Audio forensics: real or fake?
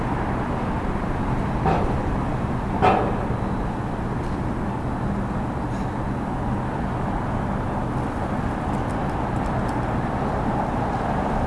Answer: real